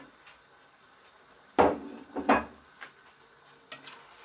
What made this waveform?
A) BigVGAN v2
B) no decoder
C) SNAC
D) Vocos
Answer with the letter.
B